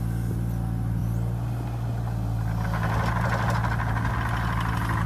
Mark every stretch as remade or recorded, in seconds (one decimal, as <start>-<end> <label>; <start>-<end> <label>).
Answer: 0.0-5.1 recorded